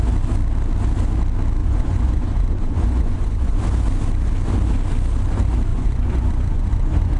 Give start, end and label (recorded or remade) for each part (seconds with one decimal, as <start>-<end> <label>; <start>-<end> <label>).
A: 0.0-1.6 recorded; 1.6-3.6 remade; 3.6-5.7 recorded; 5.7-7.2 remade